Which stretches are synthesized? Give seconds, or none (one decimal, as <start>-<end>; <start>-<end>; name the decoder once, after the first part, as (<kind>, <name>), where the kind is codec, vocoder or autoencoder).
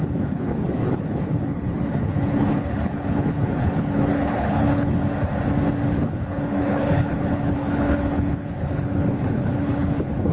0.0-5.0 (codec, HILCodec); 5.9-10.3